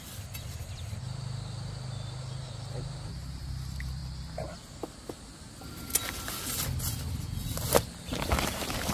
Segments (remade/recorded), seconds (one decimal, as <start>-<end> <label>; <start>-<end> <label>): 0.0-8.9 recorded